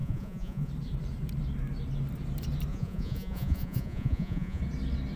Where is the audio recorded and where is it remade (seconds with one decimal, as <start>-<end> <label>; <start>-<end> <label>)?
0.0-0.7 remade; 0.7-2.7 recorded; 2.7-4.6 remade; 4.6-5.2 recorded